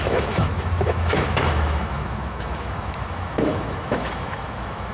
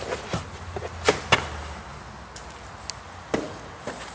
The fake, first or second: first